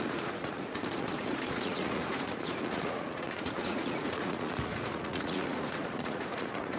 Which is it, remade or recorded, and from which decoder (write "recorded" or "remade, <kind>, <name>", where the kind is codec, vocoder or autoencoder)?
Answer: remade, vocoder, Vocos